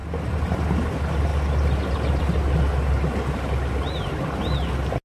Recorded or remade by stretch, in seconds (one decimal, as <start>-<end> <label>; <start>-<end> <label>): 0.0-1.3 recorded; 1.3-4.4 remade; 4.4-5.2 recorded